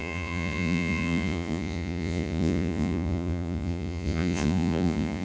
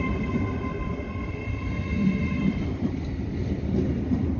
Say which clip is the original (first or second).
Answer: second